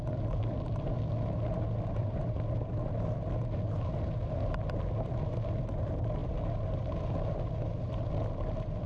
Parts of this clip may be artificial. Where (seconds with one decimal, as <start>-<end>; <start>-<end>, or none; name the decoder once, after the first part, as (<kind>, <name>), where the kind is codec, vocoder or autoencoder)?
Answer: 2.0-2.7 (vocoder, BigVGAN v2); 6.2-6.9